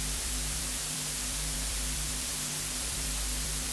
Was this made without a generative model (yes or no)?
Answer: no